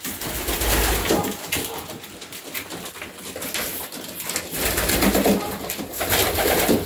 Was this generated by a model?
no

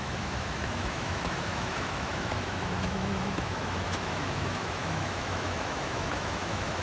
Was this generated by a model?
yes